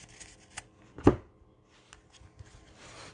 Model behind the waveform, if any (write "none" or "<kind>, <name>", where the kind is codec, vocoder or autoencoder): none